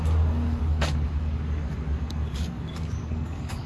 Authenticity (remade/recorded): remade